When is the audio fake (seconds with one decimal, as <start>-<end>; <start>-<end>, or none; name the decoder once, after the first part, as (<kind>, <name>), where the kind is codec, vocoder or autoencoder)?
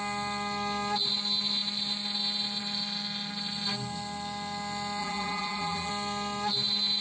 5.0-5.9 (vocoder, BigVGAN v2)